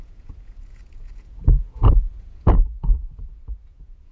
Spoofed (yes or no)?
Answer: yes